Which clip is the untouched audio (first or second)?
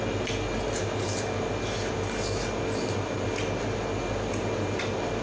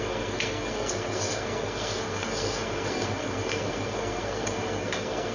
first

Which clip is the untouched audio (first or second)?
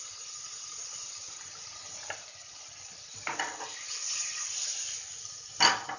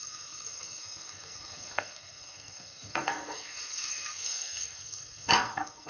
first